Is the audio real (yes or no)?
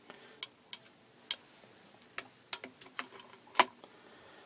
yes